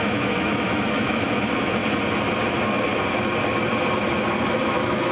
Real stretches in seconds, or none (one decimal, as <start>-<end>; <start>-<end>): 1.8-2.5; 2.9-4.5

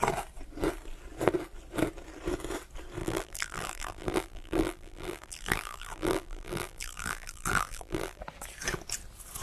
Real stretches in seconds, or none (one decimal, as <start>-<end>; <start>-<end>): 0.0-3.0; 8.2-9.4

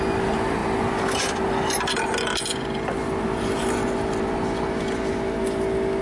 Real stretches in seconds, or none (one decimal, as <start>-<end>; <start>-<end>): 0.0-6.0

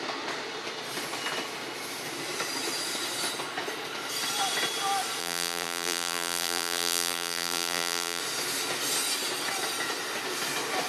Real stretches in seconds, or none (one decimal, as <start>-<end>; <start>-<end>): 0.0-5.2; 8.2-10.9

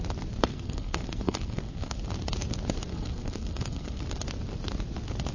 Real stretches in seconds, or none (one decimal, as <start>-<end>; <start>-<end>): 0.0-0.5; 2.0-2.9; 4.0-5.3

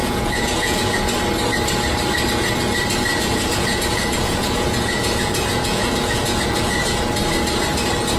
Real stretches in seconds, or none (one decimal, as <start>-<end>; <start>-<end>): 1.1-3.1; 7.0-8.2

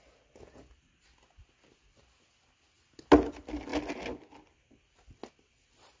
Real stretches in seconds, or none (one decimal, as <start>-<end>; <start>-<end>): 0.0-6.0